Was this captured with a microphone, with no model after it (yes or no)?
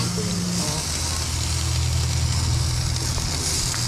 yes